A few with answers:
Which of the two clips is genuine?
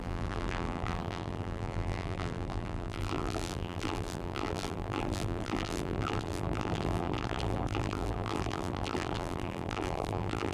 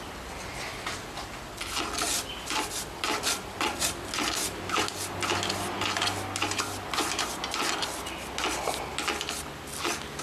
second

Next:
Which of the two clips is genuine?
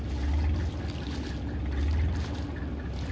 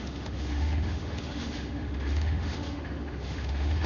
first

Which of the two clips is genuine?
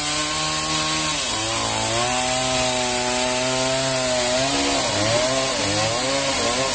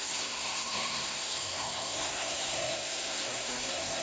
first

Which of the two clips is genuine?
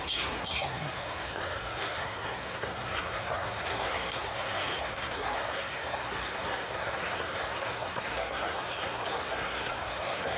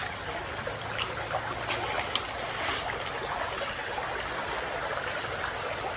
second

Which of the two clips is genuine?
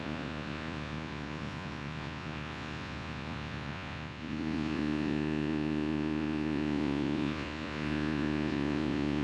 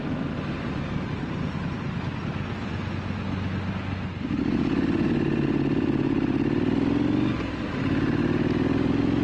second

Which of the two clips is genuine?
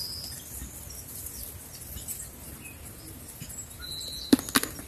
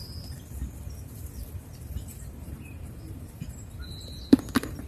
first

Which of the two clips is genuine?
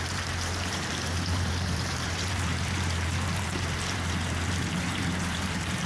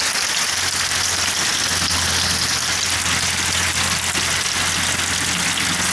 second